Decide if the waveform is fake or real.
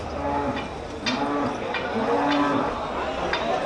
real